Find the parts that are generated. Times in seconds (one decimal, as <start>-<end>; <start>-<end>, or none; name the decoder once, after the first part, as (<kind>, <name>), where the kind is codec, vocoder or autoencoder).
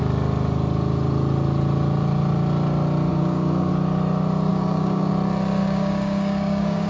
3.1-3.7 (codec, DAC); 4.5-5.1; 5.6-6.9